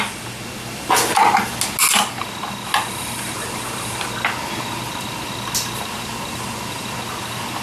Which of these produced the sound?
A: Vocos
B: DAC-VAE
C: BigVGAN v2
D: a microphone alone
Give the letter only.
D